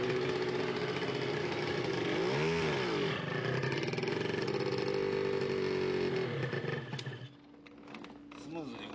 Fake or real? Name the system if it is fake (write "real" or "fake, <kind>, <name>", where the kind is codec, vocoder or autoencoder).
real